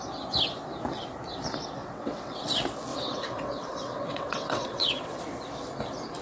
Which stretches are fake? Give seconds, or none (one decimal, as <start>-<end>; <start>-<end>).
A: 1.8-2.4; 2.9-5.2